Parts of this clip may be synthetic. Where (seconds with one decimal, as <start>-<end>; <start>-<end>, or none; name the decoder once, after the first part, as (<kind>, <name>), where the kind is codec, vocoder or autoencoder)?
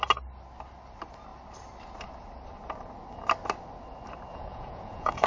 4.3-5.3 (vocoder, Vocos)